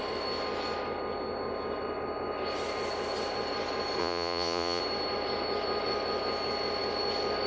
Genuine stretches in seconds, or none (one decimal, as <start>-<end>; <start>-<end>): 0.0-4.0; 4.8-7.5